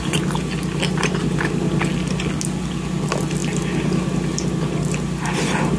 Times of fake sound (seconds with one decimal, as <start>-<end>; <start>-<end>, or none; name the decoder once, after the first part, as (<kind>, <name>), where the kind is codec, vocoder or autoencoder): none